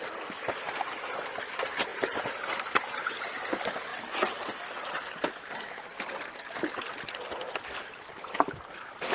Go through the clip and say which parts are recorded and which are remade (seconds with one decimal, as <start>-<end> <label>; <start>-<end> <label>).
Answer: 0.0-9.1 recorded

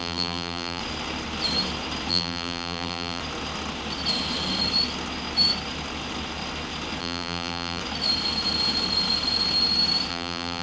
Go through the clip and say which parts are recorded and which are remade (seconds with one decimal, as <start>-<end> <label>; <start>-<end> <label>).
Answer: 0.0-0.8 remade; 0.8-2.1 recorded; 2.1-3.2 remade; 3.2-7.0 recorded; 7.0-7.8 remade; 7.8-10.1 recorded; 10.1-10.6 remade

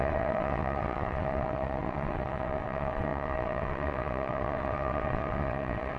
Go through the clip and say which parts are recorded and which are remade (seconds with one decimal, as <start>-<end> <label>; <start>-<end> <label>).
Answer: 0.0-6.0 remade

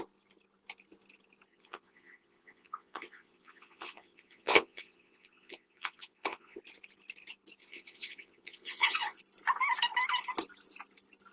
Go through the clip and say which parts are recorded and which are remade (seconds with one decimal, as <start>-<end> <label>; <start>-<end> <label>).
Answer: 0.0-1.5 recorded; 1.5-6.6 remade; 6.6-7.6 recorded; 7.6-9.2 remade; 9.2-11.3 recorded

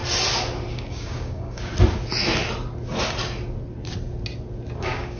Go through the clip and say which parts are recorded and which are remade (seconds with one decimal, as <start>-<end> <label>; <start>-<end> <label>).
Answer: 0.0-0.7 recorded; 0.7-1.7 remade; 1.7-4.8 recorded; 4.8-5.2 remade